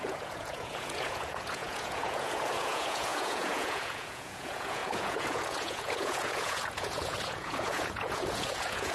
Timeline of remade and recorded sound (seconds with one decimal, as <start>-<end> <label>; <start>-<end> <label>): 0.0-8.9 remade

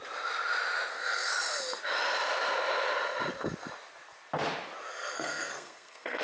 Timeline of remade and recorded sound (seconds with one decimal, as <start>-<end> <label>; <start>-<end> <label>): 0.0-0.9 recorded; 0.9-1.3 remade; 1.3-4.9 recorded; 4.9-6.2 remade

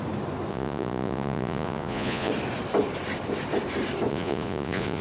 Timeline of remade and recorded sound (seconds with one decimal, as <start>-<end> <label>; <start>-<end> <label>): 0.0-0.5 recorded; 0.5-2.3 remade; 2.3-4.1 recorded; 4.1-5.0 remade